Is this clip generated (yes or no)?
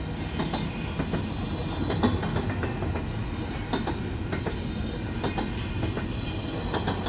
no